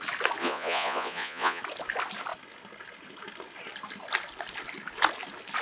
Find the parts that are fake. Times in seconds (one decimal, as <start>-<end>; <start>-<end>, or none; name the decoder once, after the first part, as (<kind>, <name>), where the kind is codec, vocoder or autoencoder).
0.4-1.6 (vocoder, Vocos)